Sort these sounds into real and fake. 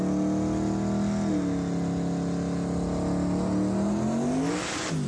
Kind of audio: real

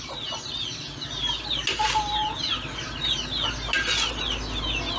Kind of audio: real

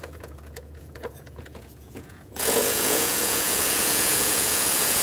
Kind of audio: fake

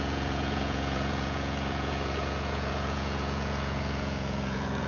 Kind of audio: fake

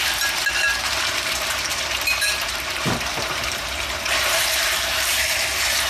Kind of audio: fake